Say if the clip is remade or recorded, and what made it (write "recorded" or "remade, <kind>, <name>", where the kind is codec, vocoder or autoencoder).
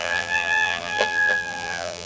remade, vocoder, BigVGAN v2